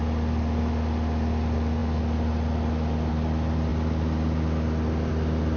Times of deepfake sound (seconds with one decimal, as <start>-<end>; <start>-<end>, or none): none